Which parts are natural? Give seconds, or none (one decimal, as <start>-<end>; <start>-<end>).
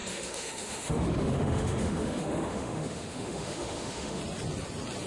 4.2-5.1